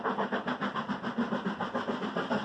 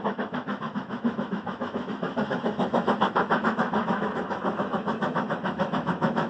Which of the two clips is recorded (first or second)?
first